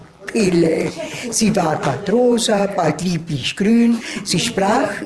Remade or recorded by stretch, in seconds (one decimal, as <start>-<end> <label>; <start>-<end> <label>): 0.0-3.0 remade; 3.0-3.4 recorded; 3.4-5.1 remade